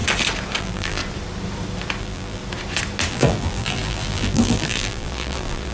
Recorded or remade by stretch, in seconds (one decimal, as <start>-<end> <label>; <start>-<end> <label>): 0.0-0.6 recorded; 0.6-1.0 remade; 1.0-2.0 recorded; 2.0-2.4 remade; 2.4-3.1 recorded; 3.1-5.7 remade

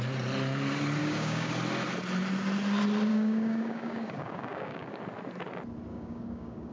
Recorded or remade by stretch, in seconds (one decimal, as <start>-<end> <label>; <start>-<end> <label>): 0.0-1.0 recorded; 1.0-1.5 remade; 1.5-3.1 recorded; 3.1-5.0 remade; 5.0-5.9 recorded; 5.9-6.7 remade

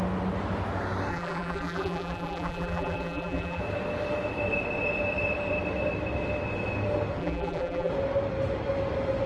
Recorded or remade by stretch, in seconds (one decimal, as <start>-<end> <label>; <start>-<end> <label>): 0.0-1.1 recorded; 1.1-3.6 remade; 3.6-7.2 recorded; 7.2-7.9 remade; 7.9-9.3 recorded

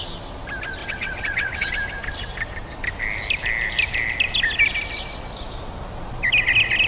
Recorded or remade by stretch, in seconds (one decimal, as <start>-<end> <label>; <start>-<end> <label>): 0.0-0.8 recorded; 0.8-1.7 remade; 1.7-6.9 recorded

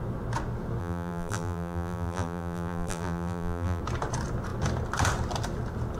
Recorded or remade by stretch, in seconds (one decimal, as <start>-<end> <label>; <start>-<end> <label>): 0.0-0.8 recorded; 0.8-3.8 remade; 3.8-6.0 recorded

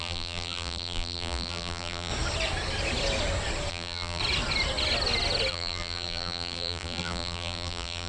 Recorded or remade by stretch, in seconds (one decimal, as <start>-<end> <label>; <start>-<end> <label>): 0.0-2.1 remade; 2.1-3.7 recorded; 3.7-4.2 remade; 4.2-5.5 recorded; 5.5-8.1 remade

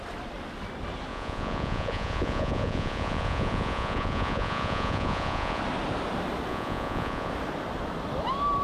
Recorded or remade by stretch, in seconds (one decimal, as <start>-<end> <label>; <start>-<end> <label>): 0.0-1.1 recorded; 1.1-5.6 remade; 5.6-6.5 recorded; 6.5-7.3 remade; 7.3-8.6 recorded